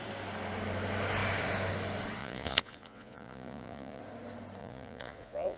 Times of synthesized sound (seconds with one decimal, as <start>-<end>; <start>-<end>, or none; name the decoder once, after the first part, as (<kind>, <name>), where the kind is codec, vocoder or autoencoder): 2.2-4.0 (vocoder, Vocos); 4.6-5.6